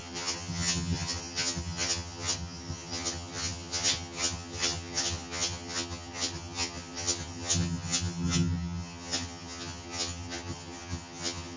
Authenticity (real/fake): fake